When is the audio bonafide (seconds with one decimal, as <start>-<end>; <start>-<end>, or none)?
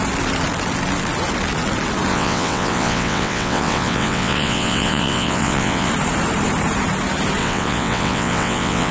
0.0-2.1; 5.9-7.4